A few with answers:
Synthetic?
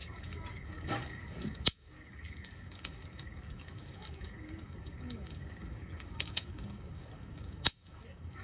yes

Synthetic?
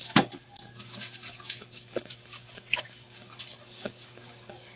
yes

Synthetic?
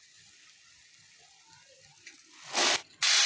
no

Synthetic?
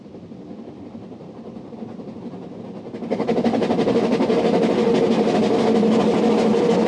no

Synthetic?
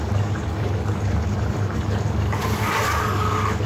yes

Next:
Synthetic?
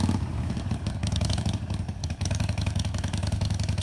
yes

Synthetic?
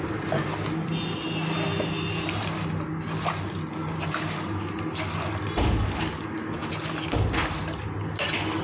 no